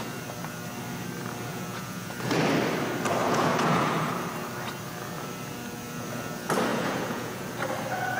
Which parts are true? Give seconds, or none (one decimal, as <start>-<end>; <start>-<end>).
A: 0.0-1.5; 2.4-3.2; 4.1-6.7; 7.5-8.2